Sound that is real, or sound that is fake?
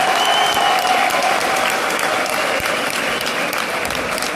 fake